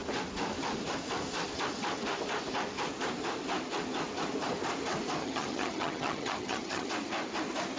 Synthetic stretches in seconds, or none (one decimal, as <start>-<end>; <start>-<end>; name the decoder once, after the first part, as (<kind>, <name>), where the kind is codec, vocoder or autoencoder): 5.2-6.9 (vocoder, HiFi-GAN)